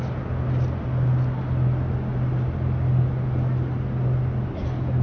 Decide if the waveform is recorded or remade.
recorded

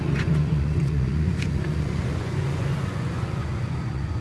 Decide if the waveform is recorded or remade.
remade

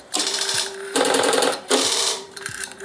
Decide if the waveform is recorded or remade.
remade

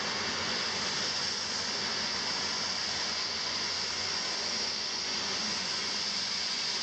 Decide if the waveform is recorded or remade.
remade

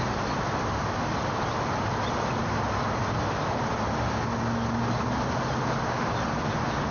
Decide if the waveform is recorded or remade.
recorded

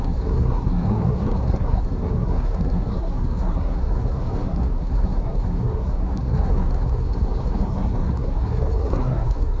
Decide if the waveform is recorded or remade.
remade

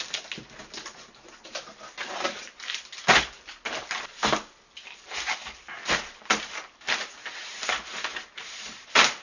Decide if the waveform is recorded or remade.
recorded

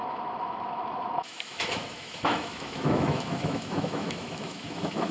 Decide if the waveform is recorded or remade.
remade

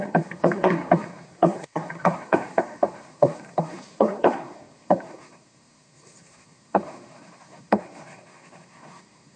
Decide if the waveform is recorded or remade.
remade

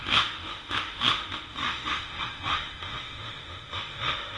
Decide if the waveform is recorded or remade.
remade